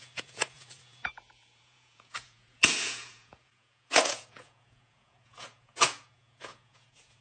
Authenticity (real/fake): fake